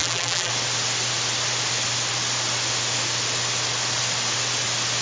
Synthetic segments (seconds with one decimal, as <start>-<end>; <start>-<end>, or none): 0.0-0.5